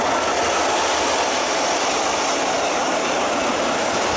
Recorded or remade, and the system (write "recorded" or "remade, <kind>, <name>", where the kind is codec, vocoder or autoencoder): recorded